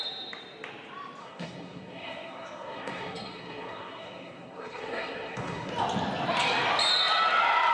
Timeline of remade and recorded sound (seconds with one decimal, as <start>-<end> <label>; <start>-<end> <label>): 0.0-1.2 recorded; 1.2-5.7 remade; 5.7-7.7 recorded